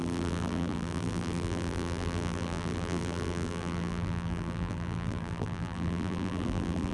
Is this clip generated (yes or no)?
yes